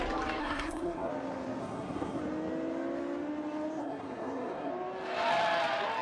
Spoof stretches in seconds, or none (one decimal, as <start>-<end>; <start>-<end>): 0.4-1.1; 1.6-2.2; 3.8-4.7